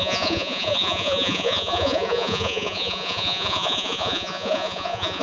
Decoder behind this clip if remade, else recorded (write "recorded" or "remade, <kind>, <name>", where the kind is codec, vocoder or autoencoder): remade, vocoder, Vocos